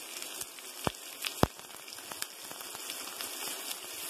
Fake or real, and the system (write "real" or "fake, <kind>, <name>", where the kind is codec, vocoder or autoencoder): real